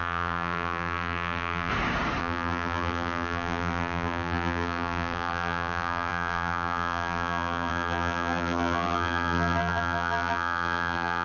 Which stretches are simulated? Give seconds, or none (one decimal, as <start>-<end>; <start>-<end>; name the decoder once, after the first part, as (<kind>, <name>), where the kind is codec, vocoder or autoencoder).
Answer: 0.0-1.7 (vocoder, BigVGAN v2); 2.2-11.2